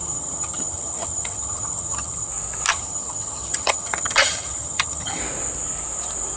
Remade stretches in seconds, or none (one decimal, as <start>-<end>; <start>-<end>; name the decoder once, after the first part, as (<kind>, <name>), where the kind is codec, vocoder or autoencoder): 0.0-2.3 (vocoder, HiFi-GAN); 2.7-5.2